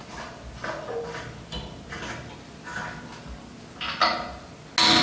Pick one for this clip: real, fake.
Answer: real